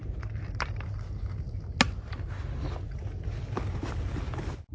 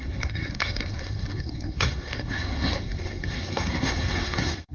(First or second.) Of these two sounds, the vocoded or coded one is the second